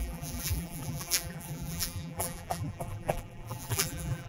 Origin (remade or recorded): remade